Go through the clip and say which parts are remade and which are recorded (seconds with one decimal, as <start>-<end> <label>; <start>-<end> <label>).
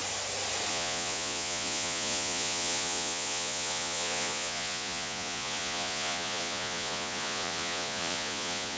0.0-0.7 recorded; 0.7-8.8 remade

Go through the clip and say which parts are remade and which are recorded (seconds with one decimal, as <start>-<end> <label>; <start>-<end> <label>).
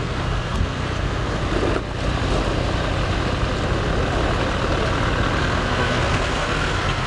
0.0-1.4 remade; 1.4-5.4 recorded; 5.4-7.1 remade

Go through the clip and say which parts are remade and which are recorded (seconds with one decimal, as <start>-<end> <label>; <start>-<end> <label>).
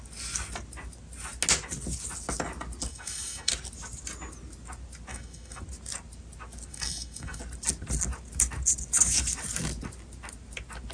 0.0-2.9 recorded; 2.9-3.5 remade; 3.5-5.1 recorded; 5.1-5.6 remade; 5.6-6.7 recorded; 6.7-7.4 remade; 7.4-10.9 recorded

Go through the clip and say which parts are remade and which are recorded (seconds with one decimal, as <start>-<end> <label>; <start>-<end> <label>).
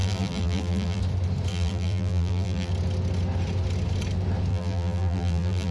0.0-1.0 remade; 1.0-1.5 recorded; 1.5-2.7 remade; 2.7-4.5 recorded; 4.5-5.7 remade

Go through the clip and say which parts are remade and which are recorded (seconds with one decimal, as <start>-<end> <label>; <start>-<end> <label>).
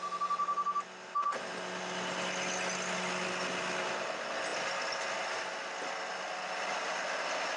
0.0-7.6 recorded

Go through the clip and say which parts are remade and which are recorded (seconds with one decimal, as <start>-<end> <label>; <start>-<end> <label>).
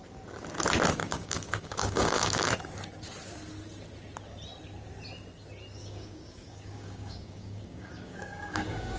0.0-1.0 recorded; 1.0-2.5 remade; 2.5-5.8 recorded; 5.8-9.0 remade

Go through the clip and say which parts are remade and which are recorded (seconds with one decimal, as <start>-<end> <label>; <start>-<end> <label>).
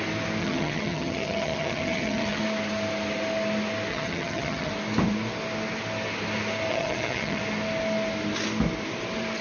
0.0-0.4 recorded; 0.4-2.4 remade; 2.4-3.9 recorded; 3.9-4.7 remade; 4.7-6.7 recorded; 6.7-7.4 remade; 7.4-9.4 recorded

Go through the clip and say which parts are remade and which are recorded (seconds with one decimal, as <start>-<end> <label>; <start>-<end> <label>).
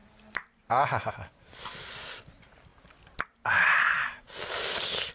0.0-5.1 recorded